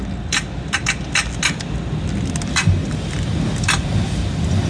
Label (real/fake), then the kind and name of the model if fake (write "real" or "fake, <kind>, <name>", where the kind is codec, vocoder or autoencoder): real